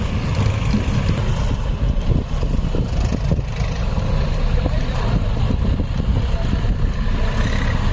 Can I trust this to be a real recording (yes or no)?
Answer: yes